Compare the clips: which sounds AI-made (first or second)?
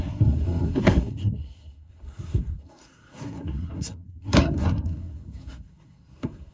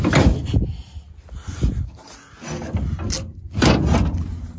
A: first